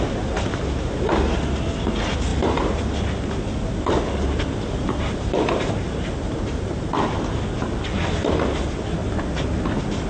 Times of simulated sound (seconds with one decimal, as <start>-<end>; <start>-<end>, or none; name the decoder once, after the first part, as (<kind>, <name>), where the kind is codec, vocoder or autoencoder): 2.3-2.8 (vocoder, BigVGAN v2); 4.8-6.9; 9.0-9.6

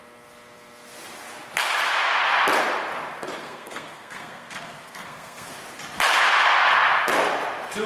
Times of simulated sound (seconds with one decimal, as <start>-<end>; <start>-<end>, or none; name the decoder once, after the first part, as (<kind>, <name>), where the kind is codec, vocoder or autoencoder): 3.4-5.5 (codec, SNAC)

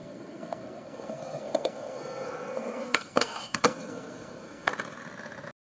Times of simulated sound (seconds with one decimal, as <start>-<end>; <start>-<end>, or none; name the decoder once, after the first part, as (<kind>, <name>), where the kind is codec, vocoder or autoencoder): 0.0-4.7 (codec, SNAC)